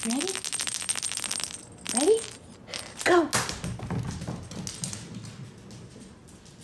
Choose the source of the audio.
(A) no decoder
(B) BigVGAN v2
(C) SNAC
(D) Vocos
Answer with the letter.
A